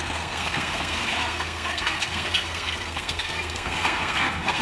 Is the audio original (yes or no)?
no